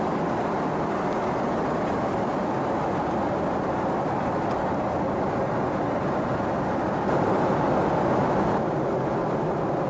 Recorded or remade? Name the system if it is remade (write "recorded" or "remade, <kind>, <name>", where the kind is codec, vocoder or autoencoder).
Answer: recorded